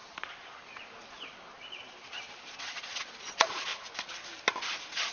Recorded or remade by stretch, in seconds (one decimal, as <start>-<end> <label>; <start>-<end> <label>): 0.0-3.7 remade; 3.7-4.6 recorded; 4.6-5.1 remade